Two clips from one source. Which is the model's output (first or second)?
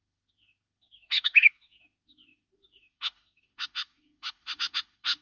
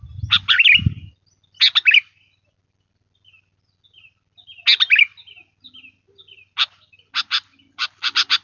first